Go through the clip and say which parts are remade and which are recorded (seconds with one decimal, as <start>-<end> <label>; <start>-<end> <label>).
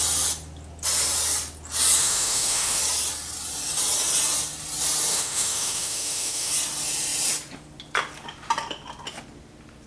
0.0-2.0 recorded; 2.0-2.8 remade; 2.8-5.1 recorded; 5.1-6.5 remade; 6.5-9.9 recorded